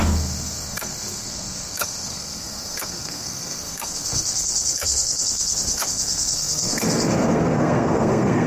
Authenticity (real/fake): fake